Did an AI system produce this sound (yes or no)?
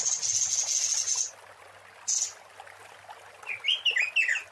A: no